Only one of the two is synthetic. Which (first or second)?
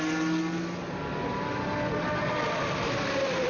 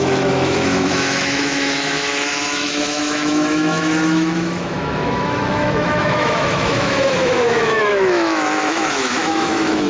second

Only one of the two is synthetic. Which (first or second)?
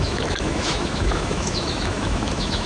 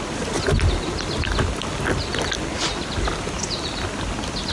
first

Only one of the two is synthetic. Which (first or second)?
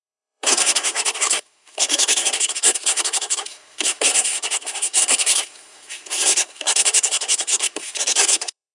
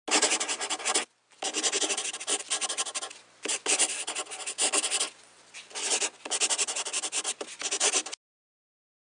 first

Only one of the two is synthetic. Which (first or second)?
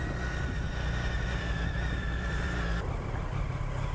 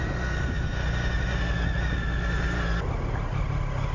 first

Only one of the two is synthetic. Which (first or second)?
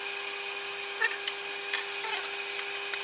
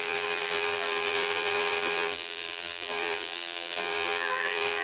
second